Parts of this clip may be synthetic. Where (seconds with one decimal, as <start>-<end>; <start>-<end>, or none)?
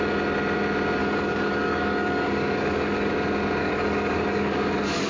1.0-3.1; 3.6-5.1